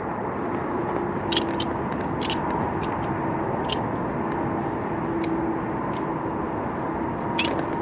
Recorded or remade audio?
recorded